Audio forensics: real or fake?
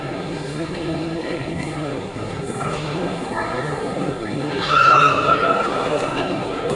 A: fake